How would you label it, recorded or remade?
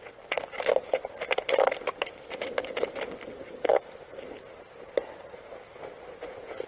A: recorded